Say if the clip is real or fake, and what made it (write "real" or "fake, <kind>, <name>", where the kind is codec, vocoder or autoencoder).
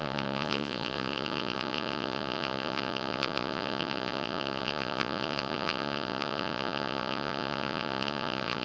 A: fake, vocoder, Vocos